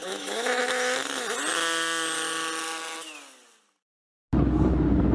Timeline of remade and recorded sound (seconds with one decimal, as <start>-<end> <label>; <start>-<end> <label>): 0.0-0.6 remade; 0.6-5.1 recorded